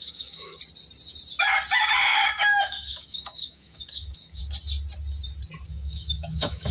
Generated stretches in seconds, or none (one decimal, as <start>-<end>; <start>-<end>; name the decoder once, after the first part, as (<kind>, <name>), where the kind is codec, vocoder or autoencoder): 0.0-0.6 (autoencoder, DAC-VAE); 1.9-4.4; 5.7-6.7